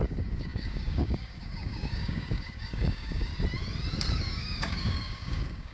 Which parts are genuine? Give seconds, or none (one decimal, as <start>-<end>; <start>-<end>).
3.3-4.1